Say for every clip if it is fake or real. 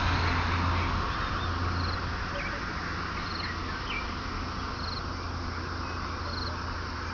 real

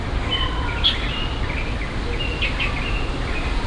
real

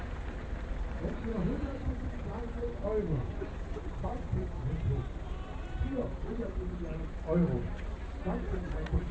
real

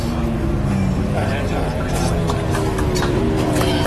real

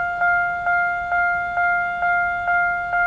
real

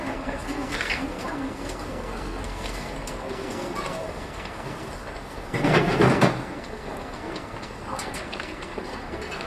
fake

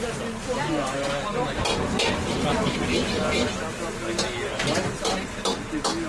real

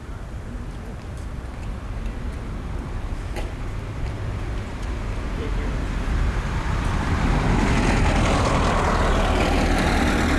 fake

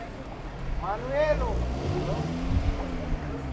real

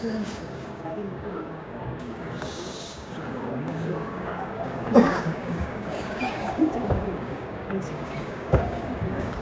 fake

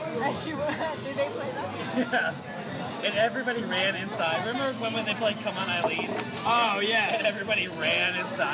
real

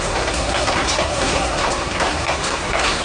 fake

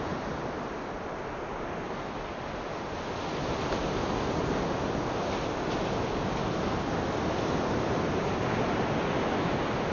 real